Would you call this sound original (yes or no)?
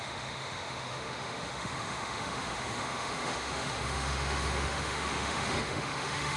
no